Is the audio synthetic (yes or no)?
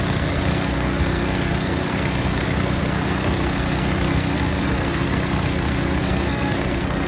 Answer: yes